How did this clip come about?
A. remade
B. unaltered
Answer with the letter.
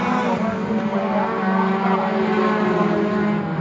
B